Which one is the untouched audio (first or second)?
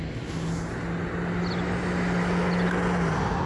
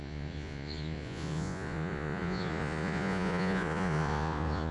first